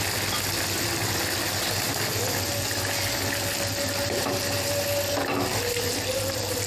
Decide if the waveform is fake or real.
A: real